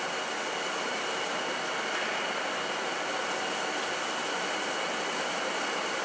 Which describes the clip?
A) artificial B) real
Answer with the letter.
B